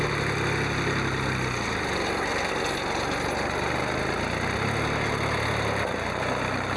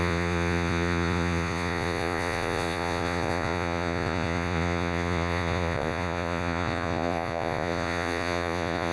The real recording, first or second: first